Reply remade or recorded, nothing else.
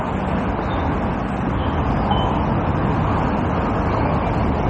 recorded